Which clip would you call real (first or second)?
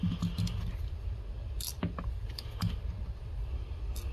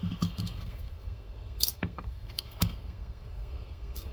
first